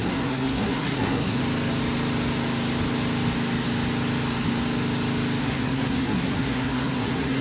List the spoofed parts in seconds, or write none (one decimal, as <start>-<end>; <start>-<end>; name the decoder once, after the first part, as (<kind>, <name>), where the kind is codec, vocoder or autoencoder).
0.0-1.4 (codec, SNAC); 5.4-7.4